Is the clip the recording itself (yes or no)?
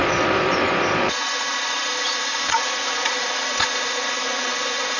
no